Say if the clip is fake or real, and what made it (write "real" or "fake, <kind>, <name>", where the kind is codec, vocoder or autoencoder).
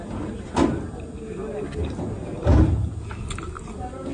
real